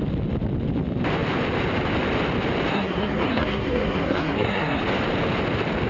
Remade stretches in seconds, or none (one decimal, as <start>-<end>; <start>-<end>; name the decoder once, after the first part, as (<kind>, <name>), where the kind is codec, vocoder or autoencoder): 2.7-4.8 (codec, SNAC)